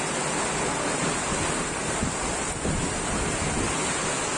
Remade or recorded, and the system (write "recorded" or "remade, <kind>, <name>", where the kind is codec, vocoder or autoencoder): recorded